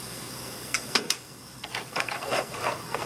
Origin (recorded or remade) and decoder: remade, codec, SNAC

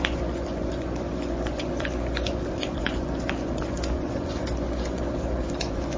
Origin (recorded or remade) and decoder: remade, vocoder, Vocos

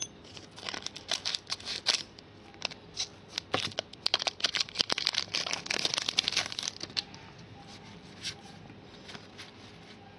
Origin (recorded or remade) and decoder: recorded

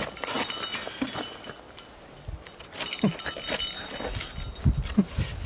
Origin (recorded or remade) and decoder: recorded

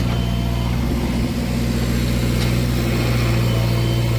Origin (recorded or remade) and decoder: recorded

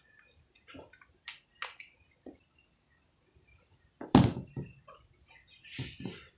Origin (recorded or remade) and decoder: recorded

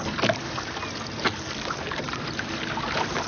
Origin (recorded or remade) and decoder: recorded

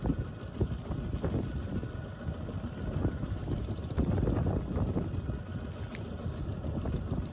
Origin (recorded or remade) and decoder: recorded